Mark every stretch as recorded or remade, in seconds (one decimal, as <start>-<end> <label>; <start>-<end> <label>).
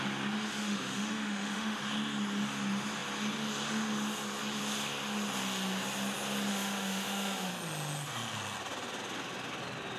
0.0-0.6 recorded; 0.6-1.8 remade; 1.8-6.5 recorded; 6.5-7.5 remade; 7.5-10.0 recorded